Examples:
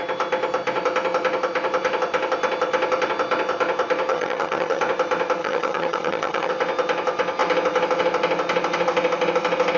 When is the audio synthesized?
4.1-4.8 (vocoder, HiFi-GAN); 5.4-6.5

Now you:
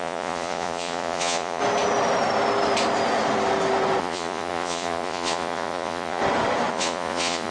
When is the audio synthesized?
0.0-1.6 (vocoder, Vocos); 4.0-6.2; 6.7-7.5

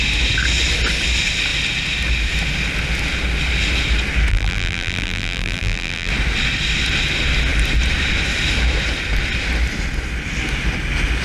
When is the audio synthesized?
4.3-6.1 (vocoder, BigVGAN v2)

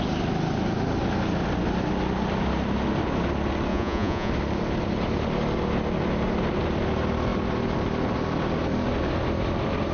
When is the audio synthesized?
3.7-4.3 (vocoder, Vocos)

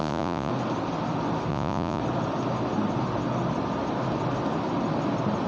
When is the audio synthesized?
0.0-0.5 (vocoder, Vocos); 1.5-2.0

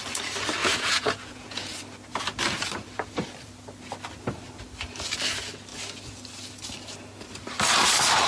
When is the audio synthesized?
0.6-1.8 (vocoder, Vocos)